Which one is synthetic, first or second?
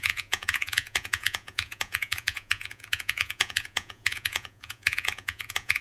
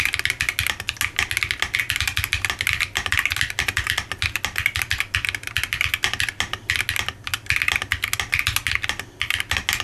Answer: first